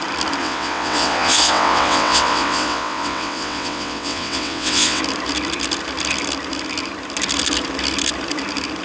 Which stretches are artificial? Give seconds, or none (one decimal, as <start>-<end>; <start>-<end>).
0.4-5.0